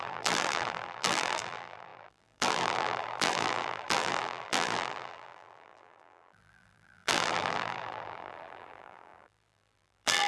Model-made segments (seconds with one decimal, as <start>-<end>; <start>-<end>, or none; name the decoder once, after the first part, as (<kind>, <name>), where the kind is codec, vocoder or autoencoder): 0.0-10.3 (vocoder, BigVGAN v2)